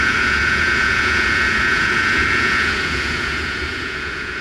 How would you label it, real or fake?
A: fake